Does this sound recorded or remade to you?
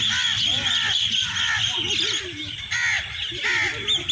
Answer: recorded